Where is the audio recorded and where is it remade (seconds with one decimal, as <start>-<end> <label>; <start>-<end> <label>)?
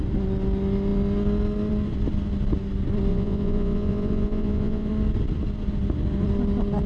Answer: 0.0-3.1 recorded; 3.1-4.9 remade; 4.9-6.9 recorded